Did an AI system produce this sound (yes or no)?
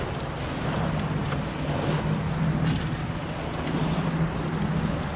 no